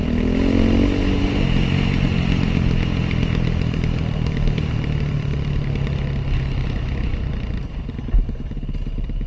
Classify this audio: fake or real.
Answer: real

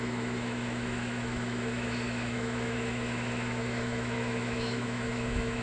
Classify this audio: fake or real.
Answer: fake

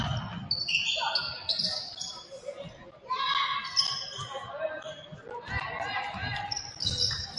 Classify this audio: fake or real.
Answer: real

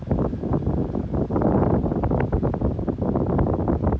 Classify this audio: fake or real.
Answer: real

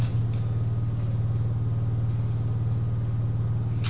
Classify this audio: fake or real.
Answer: real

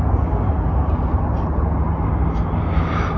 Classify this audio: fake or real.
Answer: real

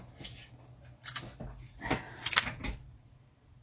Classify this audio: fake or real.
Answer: real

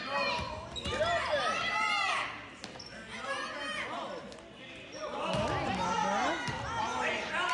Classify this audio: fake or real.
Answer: real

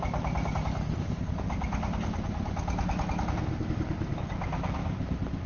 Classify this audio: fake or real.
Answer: real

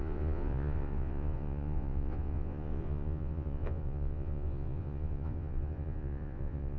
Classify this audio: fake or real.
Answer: fake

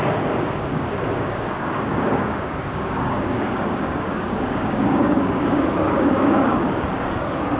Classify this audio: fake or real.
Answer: fake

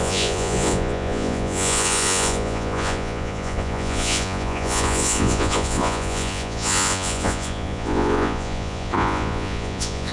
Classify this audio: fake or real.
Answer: fake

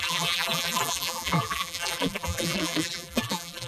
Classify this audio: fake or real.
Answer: fake